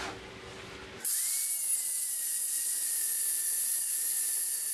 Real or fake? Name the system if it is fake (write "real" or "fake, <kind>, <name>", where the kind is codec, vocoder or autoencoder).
real